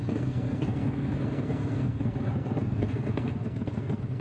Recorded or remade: remade